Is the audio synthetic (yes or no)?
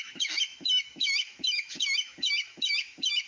yes